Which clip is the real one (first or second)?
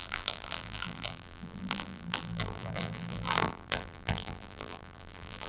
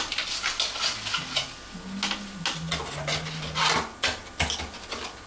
second